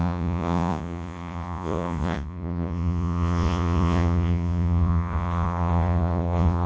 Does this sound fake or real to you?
fake